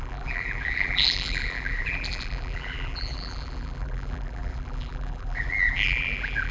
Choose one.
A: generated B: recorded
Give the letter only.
A